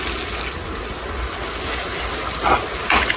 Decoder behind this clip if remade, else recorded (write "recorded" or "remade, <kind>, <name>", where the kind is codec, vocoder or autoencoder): recorded